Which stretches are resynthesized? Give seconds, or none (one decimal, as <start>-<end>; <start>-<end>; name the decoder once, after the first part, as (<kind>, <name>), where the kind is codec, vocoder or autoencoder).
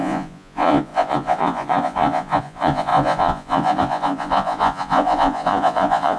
0.0-6.2 (vocoder, Vocos)